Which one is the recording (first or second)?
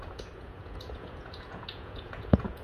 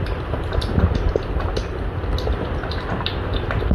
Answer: second